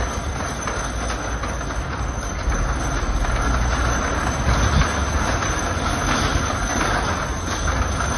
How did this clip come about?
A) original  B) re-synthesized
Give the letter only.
A